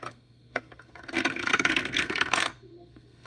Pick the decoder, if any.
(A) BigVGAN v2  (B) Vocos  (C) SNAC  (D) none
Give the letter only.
C